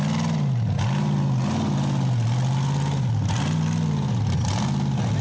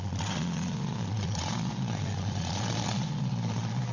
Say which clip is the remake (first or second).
second